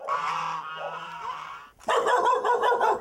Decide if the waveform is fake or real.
real